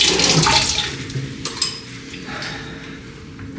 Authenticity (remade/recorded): recorded